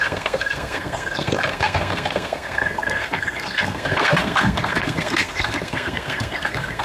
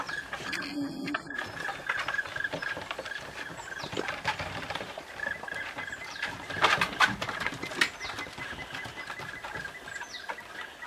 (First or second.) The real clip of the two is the second